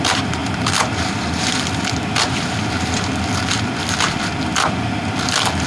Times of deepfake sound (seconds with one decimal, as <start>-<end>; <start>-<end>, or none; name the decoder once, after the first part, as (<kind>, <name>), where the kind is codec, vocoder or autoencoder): none